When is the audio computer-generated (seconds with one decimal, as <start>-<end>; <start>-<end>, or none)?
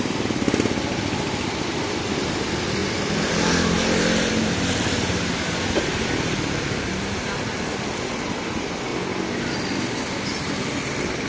0.0-2.8; 4.3-8.9; 10.2-11.3